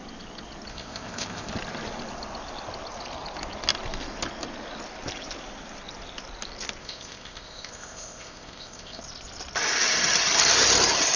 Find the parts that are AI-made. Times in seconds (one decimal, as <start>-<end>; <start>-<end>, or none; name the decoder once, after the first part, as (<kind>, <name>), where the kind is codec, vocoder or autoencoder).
0.7-1.5 (codec, ZipCodec); 6.8-9.0